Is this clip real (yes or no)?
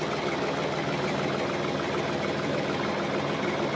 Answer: yes